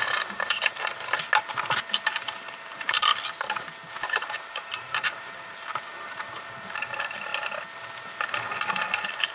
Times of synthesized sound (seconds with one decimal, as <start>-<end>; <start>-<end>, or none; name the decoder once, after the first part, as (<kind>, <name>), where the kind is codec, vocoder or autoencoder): 0.0-0.9 (vocoder, BigVGAN v2); 2.2-3.1; 3.9-7.3; 8.7-9.3